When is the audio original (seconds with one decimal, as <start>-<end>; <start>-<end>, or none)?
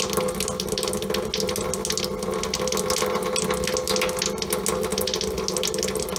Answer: 0.0-6.2